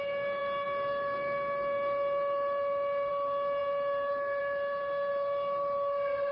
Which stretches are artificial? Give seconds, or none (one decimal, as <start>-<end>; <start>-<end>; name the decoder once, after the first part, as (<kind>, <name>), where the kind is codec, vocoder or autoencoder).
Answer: none